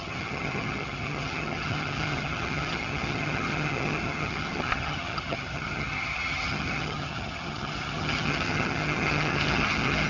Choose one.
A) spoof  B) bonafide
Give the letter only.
A